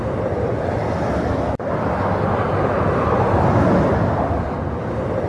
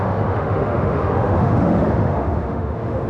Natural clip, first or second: first